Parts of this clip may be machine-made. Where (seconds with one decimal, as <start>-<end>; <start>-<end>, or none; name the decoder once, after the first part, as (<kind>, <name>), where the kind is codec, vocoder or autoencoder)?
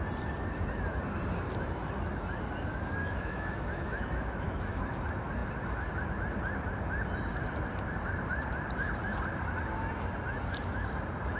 3.0-4.8 (autoencoder, DAC-VAE)